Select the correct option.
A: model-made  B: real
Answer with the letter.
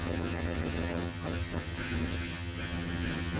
A